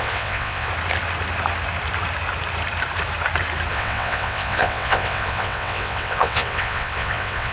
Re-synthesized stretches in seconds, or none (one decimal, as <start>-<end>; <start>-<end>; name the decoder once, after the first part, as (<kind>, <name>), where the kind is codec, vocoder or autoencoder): 0.0-0.7 (vocoder, WaveNeXt); 3.7-7.5